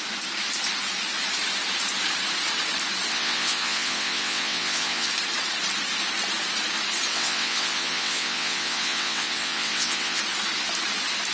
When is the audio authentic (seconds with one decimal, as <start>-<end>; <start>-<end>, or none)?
0.0-3.1; 5.1-7.1; 10.2-11.3